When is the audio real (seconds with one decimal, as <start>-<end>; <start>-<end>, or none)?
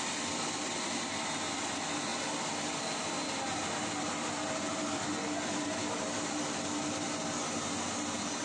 0.0-8.4